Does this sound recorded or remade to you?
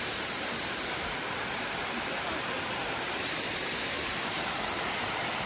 remade